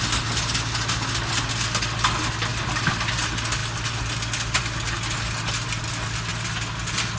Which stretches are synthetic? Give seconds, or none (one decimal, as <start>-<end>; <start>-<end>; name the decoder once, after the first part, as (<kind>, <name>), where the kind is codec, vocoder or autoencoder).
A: none